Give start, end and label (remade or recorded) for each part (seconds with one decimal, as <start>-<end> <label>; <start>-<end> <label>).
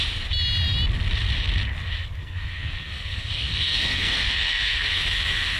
0.0-2.2 recorded; 2.2-5.6 remade